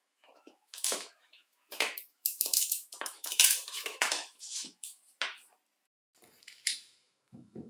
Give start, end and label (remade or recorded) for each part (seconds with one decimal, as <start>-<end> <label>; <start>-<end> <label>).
0.0-5.0 remade; 5.0-6.4 recorded; 6.4-7.7 remade

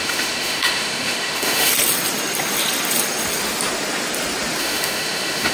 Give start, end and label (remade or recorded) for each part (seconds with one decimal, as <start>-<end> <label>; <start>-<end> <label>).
0.0-1.7 remade; 1.7-4.6 recorded; 4.6-5.5 remade

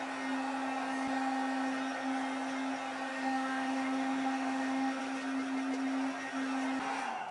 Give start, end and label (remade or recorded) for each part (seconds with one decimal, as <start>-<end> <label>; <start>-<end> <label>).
0.0-3.1 recorded; 3.1-5.0 remade; 5.0-7.3 recorded

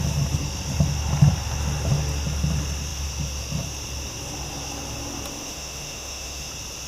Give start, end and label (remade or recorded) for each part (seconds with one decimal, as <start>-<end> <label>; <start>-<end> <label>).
0.0-5.4 recorded; 5.4-6.5 remade; 6.5-6.9 recorded

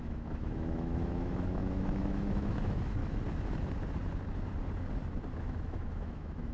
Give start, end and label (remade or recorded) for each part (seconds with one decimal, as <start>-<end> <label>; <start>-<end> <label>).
0.0-3.0 remade; 3.0-5.4 recorded; 5.4-6.5 remade